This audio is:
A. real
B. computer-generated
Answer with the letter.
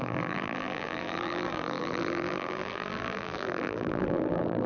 B